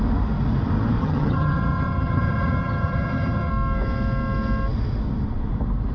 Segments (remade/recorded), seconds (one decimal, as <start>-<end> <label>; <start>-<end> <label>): 0.0-1.0 recorded; 1.0-3.5 remade; 3.5-5.9 recorded